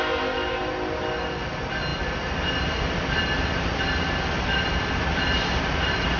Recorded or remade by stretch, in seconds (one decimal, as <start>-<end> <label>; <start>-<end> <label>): 0.0-6.2 recorded

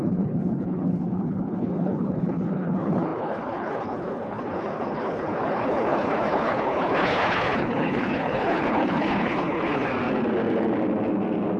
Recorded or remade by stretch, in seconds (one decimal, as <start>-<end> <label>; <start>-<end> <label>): 0.0-9.9 remade; 9.9-11.6 recorded

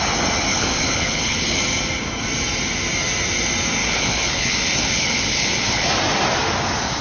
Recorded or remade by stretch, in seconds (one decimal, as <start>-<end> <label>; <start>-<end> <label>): 0.0-0.5 recorded; 0.5-1.6 remade; 1.6-3.8 recorded; 3.8-5.9 remade; 5.9-7.0 recorded

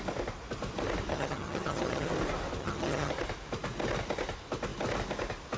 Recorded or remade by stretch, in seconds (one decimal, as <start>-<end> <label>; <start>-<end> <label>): 0.0-1.1 recorded; 1.1-2.1 remade; 2.1-2.6 recorded; 2.6-3.1 remade; 3.1-5.6 recorded

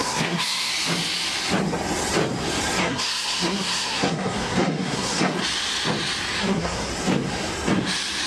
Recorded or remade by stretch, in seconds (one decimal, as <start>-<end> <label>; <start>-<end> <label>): 0.0-0.7 remade; 0.7-2.8 recorded; 2.8-5.4 remade; 5.4-6.4 recorded; 6.4-6.9 remade; 6.9-8.3 recorded